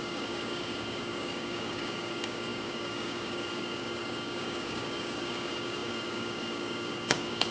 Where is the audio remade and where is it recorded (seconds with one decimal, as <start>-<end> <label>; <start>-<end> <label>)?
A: 0.0-7.5 remade

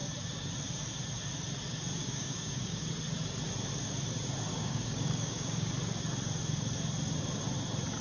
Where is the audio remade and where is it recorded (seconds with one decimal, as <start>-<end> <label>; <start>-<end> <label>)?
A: 0.0-2.0 recorded; 2.0-2.9 remade; 2.9-4.5 recorded; 4.5-5.7 remade; 5.7-8.0 recorded

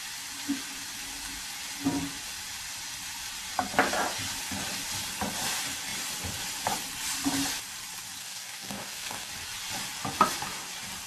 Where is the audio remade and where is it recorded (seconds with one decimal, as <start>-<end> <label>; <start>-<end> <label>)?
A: 0.0-8.2 recorded; 8.2-9.3 remade; 9.3-11.1 recorded

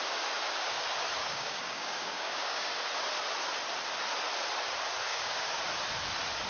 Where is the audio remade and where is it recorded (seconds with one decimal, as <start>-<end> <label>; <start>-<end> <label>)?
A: 0.0-1.2 recorded; 1.2-2.7 remade; 2.7-5.1 recorded; 5.1-5.6 remade; 5.6-6.5 recorded

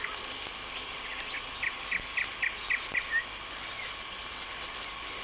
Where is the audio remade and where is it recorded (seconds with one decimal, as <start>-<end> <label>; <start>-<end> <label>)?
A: 0.0-5.2 recorded

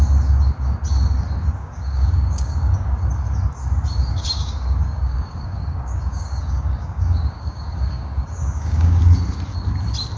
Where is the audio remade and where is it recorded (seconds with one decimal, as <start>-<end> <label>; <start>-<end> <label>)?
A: 0.0-1.6 recorded; 1.6-3.1 remade; 3.1-4.1 recorded; 4.1-9.0 remade; 9.0-10.2 recorded

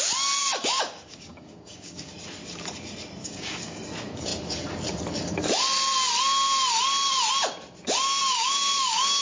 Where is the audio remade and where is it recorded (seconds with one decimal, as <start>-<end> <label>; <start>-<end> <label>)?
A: 0.0-0.4 recorded; 0.4-2.1 remade; 2.1-3.2 recorded; 3.2-3.8 remade; 3.8-8.2 recorded; 8.2-9.2 remade